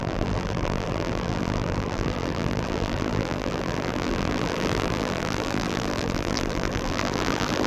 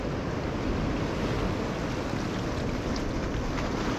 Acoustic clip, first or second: second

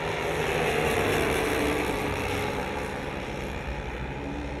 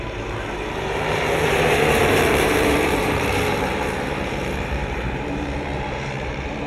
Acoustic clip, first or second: first